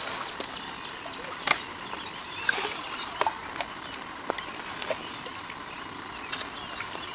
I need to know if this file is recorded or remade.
recorded